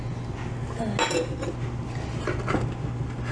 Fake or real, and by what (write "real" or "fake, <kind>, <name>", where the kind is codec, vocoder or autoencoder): real